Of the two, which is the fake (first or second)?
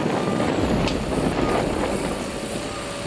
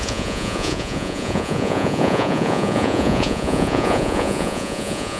second